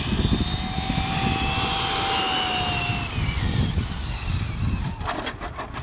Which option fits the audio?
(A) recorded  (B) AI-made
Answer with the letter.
A